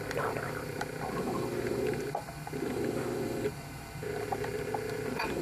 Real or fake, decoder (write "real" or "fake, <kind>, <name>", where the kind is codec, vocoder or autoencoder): fake, vocoder, BigVGAN v2